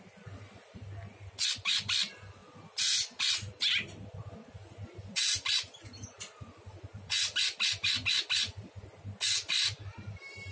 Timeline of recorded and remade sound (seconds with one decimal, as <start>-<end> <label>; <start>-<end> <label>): 0.0-10.5 recorded